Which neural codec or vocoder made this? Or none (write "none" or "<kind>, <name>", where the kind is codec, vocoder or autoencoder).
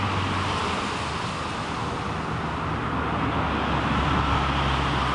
none